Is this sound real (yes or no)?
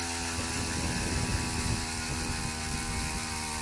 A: yes